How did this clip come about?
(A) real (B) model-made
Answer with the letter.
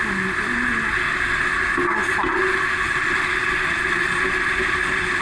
A